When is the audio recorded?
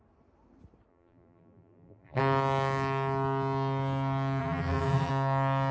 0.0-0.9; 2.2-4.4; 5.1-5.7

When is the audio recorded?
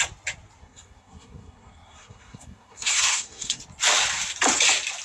0.0-0.6; 3.6-5.0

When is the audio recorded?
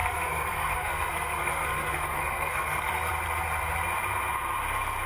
3.1-5.1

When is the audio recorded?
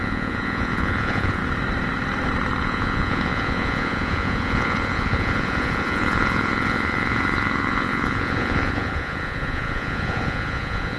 1.4-2.6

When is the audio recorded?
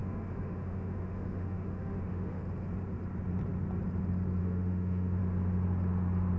2.4-4.4; 5.2-6.4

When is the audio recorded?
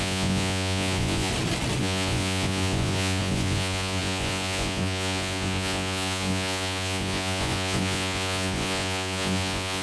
1.3-1.8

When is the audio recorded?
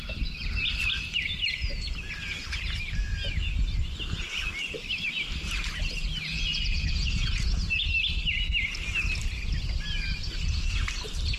0.0-6.3; 7.6-11.4